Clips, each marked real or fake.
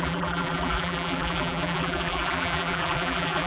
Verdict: fake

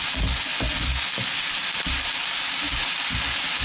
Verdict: real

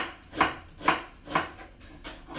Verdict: real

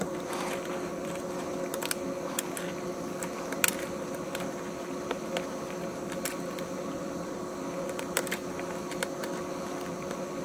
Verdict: real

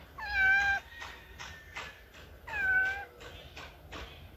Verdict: real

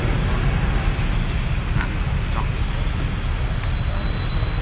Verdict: fake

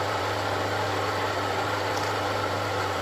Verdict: fake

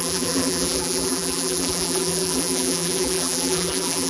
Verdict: fake